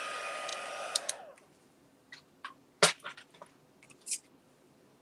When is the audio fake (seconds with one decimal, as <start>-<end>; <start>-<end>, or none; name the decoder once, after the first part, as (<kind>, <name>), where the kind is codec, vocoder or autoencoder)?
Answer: none